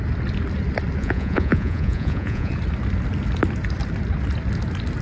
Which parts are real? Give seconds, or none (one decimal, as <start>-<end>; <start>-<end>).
0.0-1.0; 2.5-5.0